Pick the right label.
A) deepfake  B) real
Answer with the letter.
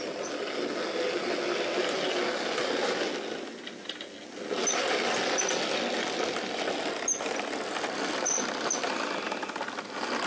B